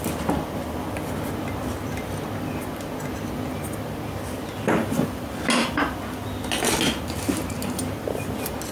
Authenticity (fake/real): real